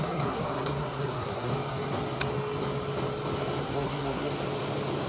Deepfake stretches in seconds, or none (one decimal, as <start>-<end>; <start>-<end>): 0.0-1.5; 3.6-4.3